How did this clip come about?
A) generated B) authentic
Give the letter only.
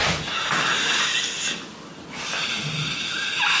B